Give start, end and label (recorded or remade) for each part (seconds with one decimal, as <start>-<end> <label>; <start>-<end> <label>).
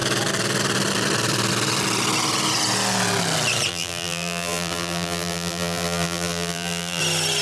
0.0-3.7 recorded; 3.7-7.0 remade; 7.0-7.4 recorded